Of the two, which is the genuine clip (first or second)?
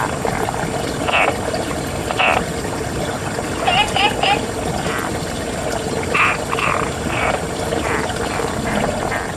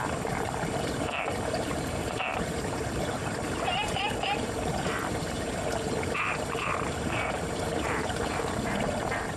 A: first